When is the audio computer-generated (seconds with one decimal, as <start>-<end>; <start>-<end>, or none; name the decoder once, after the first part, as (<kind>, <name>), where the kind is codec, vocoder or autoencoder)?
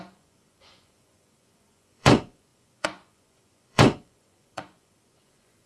0.0-5.7 (vocoder, Vocos)